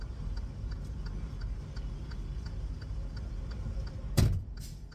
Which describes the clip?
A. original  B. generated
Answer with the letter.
A